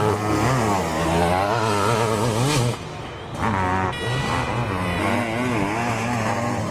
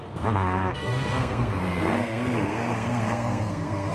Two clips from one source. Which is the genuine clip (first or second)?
first